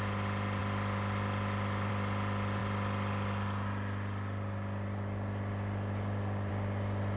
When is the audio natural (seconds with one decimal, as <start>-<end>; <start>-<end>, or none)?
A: 0.0-7.2